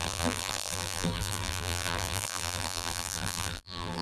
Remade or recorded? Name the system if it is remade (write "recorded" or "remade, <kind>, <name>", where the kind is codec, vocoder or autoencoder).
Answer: remade, vocoder, BigVGAN v2